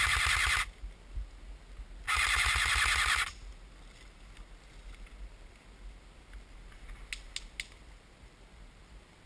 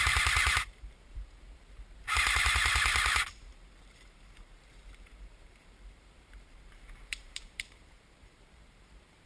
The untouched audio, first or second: first